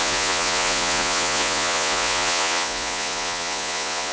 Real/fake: fake